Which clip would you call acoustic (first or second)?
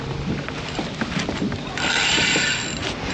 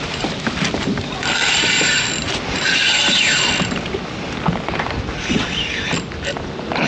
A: first